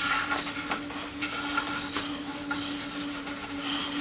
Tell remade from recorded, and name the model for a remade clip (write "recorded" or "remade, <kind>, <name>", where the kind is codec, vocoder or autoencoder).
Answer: recorded